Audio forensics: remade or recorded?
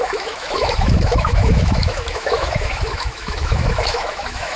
remade